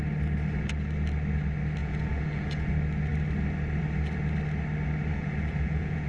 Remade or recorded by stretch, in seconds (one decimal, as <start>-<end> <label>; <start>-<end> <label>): 0.0-1.8 recorded; 1.8-2.7 remade; 2.7-5.1 recorded; 5.1-6.1 remade